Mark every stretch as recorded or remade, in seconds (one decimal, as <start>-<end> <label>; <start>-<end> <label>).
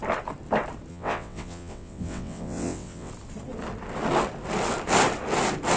0.0-0.9 recorded; 0.9-3.1 remade; 3.1-5.8 recorded